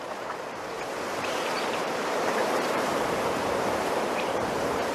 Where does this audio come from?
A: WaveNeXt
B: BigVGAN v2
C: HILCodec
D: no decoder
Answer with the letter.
B